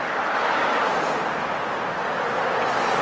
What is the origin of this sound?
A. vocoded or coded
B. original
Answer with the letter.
B